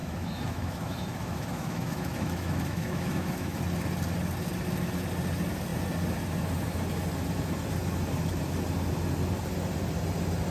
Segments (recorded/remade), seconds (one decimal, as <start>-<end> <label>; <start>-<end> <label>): 0.0-3.6 remade; 3.6-10.5 recorded